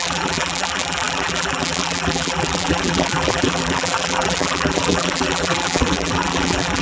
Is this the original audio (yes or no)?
no